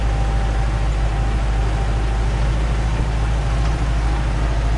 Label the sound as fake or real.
real